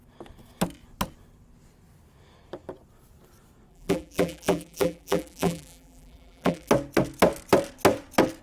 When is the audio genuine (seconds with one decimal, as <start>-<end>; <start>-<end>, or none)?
0.0-3.7; 6.7-8.4